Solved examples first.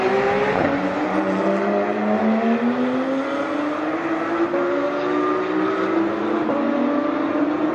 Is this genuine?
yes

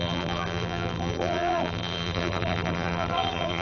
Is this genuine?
no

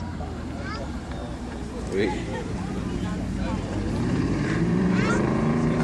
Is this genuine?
no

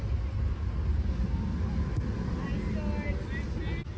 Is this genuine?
yes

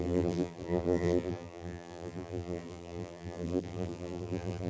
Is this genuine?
no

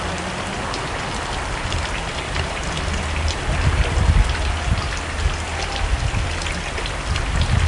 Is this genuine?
yes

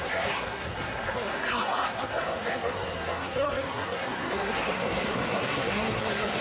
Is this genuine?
no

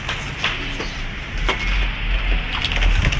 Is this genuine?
yes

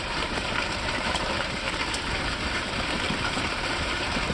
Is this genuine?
no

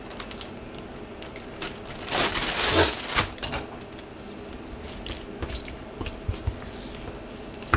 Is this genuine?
yes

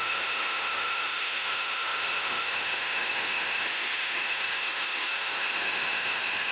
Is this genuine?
no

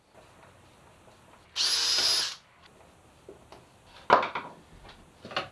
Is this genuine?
yes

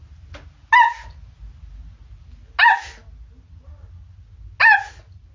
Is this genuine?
yes